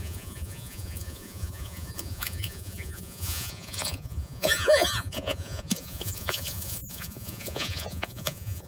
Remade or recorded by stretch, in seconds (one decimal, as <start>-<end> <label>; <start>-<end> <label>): 0.0-8.7 remade